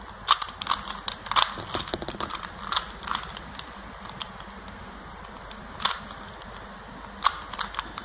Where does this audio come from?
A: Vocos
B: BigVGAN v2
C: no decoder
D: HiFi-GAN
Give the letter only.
C